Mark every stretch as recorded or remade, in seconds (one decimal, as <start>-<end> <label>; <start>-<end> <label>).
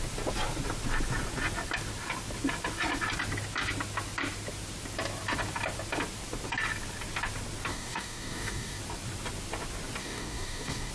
0.0-7.7 recorded; 7.7-8.8 remade; 8.8-10.0 recorded; 10.0-10.9 remade